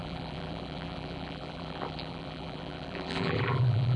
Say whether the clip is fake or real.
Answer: fake